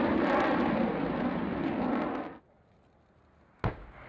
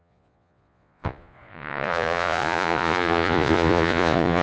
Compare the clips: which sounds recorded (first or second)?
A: first